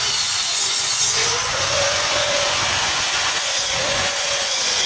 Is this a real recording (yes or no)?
no